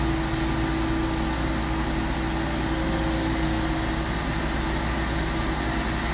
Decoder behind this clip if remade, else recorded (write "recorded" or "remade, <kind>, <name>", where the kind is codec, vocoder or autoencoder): recorded